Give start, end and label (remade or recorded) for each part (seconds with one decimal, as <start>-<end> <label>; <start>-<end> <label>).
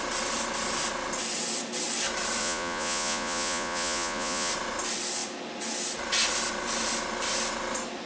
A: 0.0-2.4 recorded; 2.4-4.5 remade; 4.5-8.1 recorded